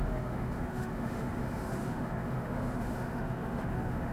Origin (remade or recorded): remade